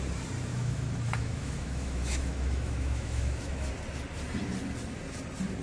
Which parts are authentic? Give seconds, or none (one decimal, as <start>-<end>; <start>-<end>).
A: 0.0-0.5; 3.7-5.6